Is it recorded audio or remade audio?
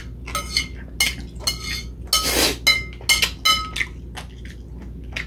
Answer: recorded